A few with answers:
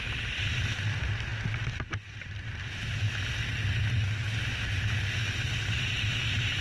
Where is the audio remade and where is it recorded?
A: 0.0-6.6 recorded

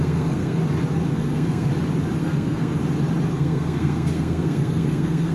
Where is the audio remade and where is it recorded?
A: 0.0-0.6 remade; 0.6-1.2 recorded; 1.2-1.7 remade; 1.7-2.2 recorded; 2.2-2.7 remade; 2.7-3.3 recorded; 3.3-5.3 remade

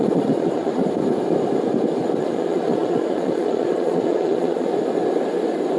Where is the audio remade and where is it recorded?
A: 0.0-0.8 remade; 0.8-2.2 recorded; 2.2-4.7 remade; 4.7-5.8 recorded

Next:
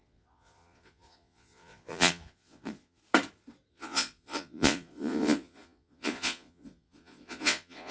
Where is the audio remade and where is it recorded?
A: 0.0-3.0 remade; 3.0-3.7 recorded; 3.7-7.9 remade

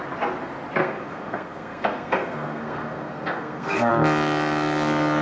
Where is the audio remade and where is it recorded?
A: 0.0-0.8 recorded; 0.8-3.9 remade; 3.9-5.2 recorded

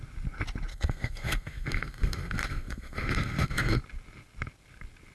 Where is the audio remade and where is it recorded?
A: 0.0-0.7 recorded; 0.7-3.8 remade; 3.8-5.1 recorded